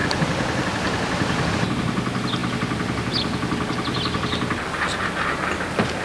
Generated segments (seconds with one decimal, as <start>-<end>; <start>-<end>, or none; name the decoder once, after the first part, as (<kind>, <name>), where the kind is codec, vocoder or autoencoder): none